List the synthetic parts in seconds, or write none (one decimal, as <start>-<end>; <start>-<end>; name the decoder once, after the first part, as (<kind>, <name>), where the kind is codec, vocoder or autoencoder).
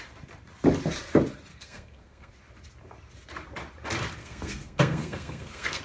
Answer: 1.5-2.3 (codec, SNAC); 4.2-5.8